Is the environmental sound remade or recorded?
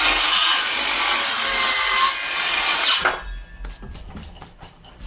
recorded